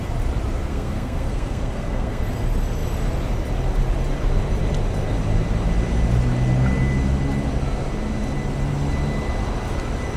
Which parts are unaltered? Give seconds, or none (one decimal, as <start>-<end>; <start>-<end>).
0.0-0.7; 2.2-10.2